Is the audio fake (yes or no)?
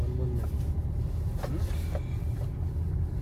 no